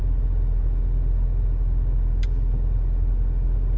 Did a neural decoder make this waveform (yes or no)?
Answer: no